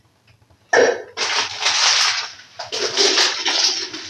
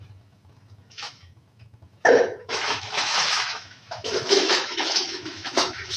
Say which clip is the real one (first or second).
first